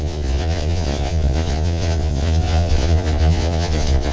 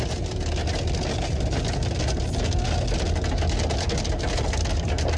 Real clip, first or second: second